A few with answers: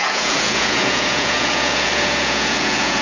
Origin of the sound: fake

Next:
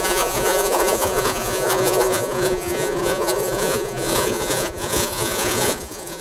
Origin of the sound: fake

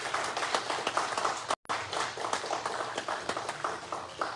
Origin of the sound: real